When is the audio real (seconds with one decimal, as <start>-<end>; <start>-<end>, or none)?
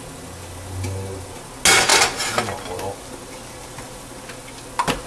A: 0.0-5.1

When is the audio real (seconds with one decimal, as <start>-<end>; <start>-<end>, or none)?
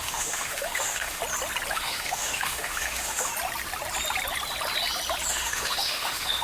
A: 1.2-1.7; 3.3-5.3